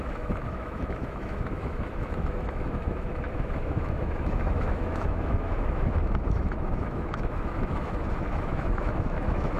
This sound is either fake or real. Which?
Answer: fake